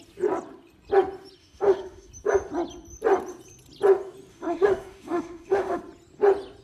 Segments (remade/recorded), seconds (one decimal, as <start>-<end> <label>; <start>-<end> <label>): 0.0-1.4 recorded; 1.4-2.1 remade; 2.1-4.3 recorded; 4.3-5.8 remade; 5.8-6.6 recorded